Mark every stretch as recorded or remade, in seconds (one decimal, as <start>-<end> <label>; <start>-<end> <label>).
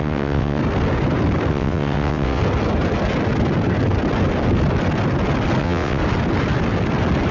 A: 0.0-0.6 remade; 0.6-1.5 recorded; 1.5-2.4 remade; 2.4-5.6 recorded; 5.6-6.0 remade; 6.0-7.3 recorded